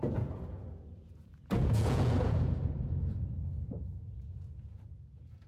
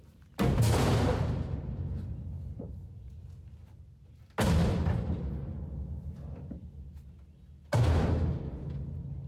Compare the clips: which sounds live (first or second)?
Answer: second